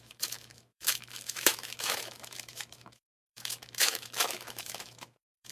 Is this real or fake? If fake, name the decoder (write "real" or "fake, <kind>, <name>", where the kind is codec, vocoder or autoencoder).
fake, autoencoder, DAC-VAE